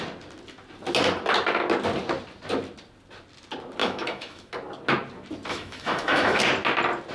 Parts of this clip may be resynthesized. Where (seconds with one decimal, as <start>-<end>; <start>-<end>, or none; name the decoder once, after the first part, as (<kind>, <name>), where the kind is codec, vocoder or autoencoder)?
3.8-4.5 (autoencoder, DAC-VAE); 5.5-6.4